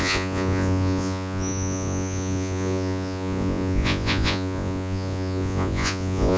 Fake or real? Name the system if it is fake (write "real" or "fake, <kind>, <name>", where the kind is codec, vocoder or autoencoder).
fake, vocoder, Vocos